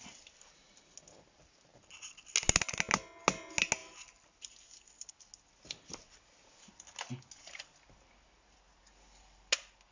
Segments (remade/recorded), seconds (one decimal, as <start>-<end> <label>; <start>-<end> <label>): 0.0-9.9 recorded